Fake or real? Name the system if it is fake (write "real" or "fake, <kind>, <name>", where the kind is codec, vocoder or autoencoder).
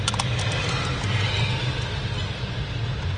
real